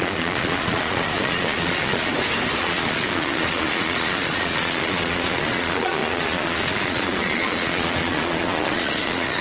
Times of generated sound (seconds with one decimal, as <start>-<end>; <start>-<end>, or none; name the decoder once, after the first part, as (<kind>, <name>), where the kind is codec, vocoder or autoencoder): 0.0-2.1 (vocoder, Vocos); 2.6-9.4